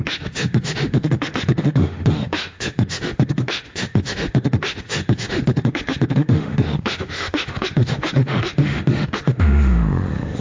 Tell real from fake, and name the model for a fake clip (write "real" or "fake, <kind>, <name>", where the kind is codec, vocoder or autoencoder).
fake, autoencoder, DAC-VAE